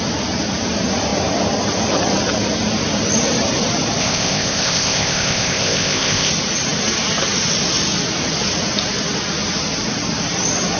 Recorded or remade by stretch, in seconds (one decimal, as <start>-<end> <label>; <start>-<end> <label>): 0.0-4.0 recorded; 4.0-6.3 remade; 6.3-10.8 recorded